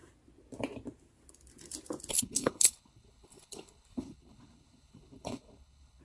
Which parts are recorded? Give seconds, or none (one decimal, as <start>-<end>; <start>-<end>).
0.0-2.1